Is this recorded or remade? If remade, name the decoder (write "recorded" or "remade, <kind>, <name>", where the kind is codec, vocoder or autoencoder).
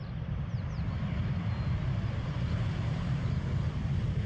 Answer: remade, vocoder, BigVGAN v2